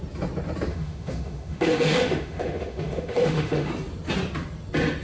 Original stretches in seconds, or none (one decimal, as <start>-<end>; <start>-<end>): 0.0-0.7; 3.7-5.0